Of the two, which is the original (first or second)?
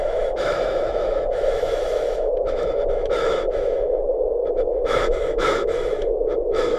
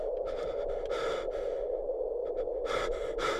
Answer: second